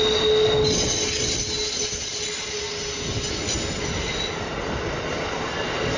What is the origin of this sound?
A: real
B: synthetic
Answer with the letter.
A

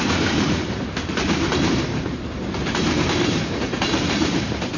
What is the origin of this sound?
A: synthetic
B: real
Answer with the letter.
A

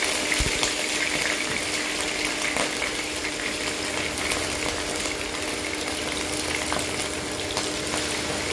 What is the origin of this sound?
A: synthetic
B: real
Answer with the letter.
B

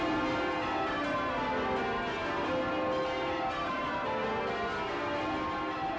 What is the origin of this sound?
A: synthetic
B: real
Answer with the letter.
B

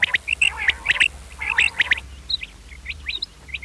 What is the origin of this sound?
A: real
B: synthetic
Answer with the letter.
A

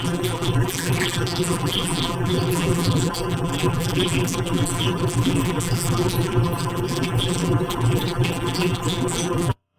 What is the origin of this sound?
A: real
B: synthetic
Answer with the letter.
B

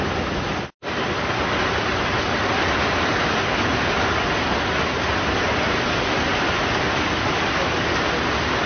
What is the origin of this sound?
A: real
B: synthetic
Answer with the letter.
A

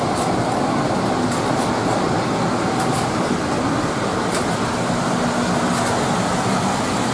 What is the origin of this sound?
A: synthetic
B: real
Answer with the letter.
B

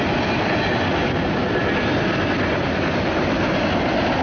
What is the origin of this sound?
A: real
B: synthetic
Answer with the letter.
A